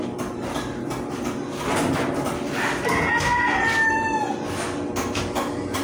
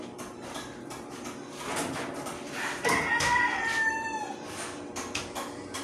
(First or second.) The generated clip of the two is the second